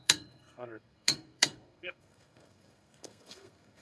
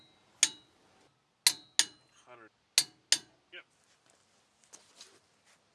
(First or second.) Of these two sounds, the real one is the second